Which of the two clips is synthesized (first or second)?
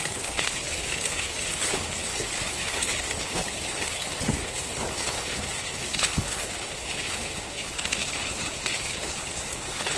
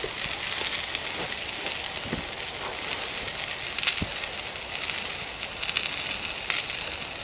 first